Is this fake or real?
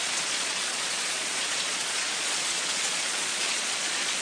fake